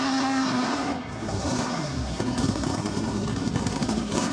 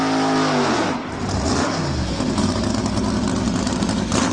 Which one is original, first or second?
second